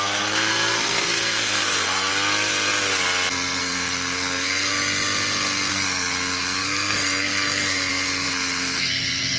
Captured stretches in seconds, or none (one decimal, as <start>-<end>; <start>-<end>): 2.1-3.6; 4.7-5.7